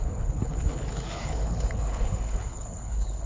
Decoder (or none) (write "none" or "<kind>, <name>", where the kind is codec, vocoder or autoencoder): codec, HILCodec